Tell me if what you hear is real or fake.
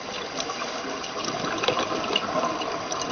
real